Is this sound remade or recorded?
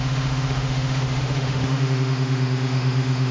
remade